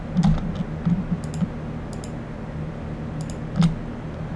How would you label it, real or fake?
real